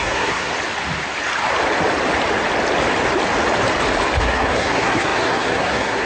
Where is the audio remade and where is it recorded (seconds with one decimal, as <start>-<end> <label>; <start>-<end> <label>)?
0.0-0.5 remade; 0.5-4.2 recorded; 4.2-6.1 remade